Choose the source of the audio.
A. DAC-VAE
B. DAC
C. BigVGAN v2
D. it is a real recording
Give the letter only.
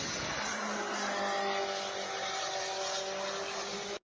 D